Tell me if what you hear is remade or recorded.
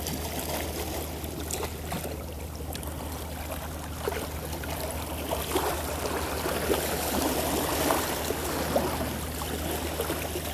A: recorded